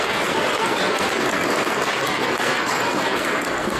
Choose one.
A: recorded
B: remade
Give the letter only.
B